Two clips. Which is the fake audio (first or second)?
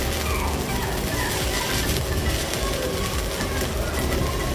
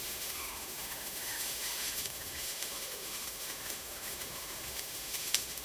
second